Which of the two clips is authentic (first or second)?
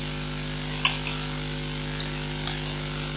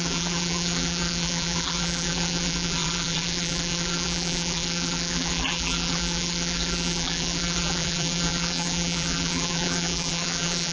first